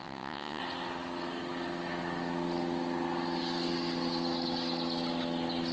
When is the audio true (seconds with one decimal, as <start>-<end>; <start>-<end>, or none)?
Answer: 0.6-5.7